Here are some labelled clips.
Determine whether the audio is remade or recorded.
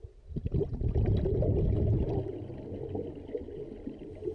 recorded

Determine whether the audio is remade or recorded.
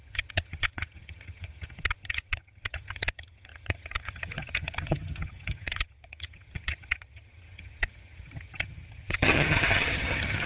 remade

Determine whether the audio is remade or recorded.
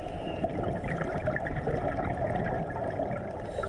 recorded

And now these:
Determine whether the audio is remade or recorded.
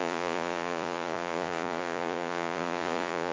remade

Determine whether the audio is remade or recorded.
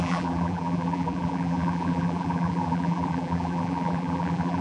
remade